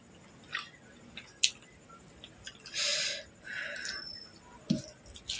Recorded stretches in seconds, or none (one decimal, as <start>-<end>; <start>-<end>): 0.0-5.4